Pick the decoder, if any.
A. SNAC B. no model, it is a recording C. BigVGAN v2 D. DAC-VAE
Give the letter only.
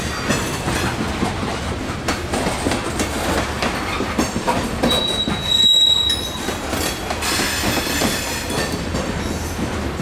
B